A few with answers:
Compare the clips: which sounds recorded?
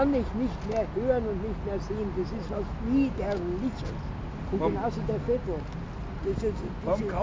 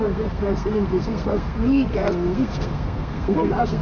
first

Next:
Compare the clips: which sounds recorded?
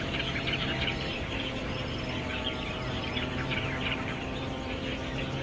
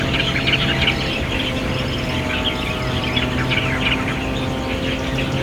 second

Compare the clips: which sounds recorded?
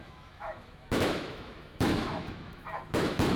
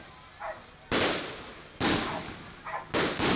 second